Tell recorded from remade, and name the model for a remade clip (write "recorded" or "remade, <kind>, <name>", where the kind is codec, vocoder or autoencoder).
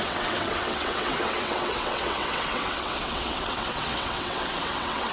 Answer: remade, vocoder, WaveNeXt